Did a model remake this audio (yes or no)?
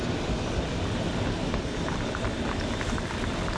no